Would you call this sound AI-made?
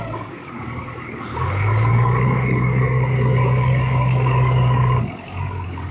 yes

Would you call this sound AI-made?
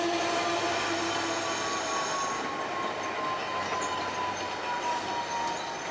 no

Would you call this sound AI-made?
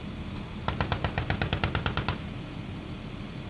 no